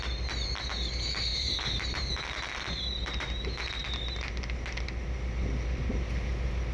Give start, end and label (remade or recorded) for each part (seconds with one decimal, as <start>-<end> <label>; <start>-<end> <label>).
0.0-1.3 recorded; 1.3-2.1 remade; 2.1-6.7 recorded

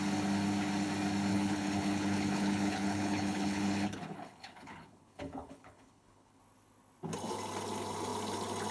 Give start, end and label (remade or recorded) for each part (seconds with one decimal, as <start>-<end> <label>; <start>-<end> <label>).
0.0-1.3 recorded; 1.3-6.4 remade; 6.4-8.7 recorded

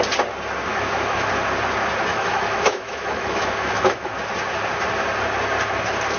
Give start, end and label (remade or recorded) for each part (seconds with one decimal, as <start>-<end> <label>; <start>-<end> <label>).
0.0-0.7 recorded; 0.7-1.3 remade; 1.3-2.1 recorded; 2.1-4.1 remade; 4.1-6.2 recorded

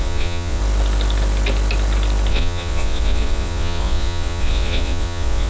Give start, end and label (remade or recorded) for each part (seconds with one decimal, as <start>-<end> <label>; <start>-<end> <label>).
0.0-0.6 remade; 0.6-2.3 recorded; 2.3-5.5 remade

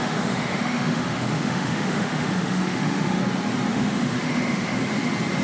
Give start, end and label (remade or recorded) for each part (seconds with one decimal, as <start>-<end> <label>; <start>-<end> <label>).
0.0-3.2 remade; 3.2-3.7 recorded; 3.7-4.8 remade; 4.8-5.4 recorded